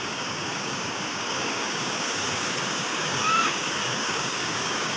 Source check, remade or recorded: remade